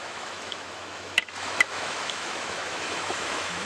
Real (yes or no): no